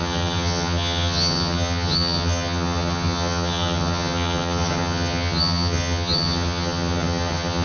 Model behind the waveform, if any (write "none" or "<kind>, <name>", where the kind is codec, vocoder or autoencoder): vocoder, HiFi-GAN